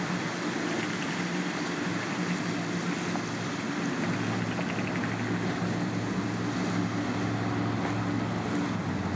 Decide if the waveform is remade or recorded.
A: recorded